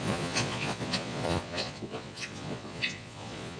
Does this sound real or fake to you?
fake